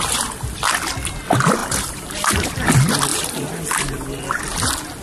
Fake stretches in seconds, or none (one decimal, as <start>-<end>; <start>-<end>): 1.6-2.5; 3.1-4.4